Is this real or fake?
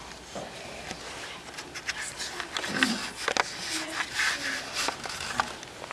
real